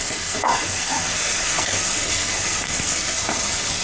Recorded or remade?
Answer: remade